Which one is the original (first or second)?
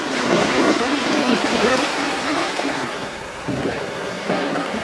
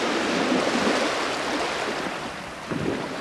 second